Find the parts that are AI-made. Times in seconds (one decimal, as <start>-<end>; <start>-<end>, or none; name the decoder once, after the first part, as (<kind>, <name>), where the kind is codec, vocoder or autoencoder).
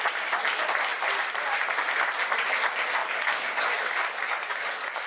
3.0-5.1 (codec, DAC)